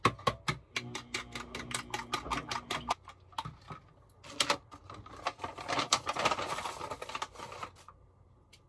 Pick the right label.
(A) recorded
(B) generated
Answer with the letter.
A